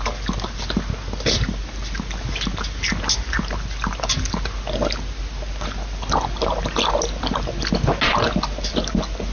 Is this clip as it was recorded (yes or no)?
yes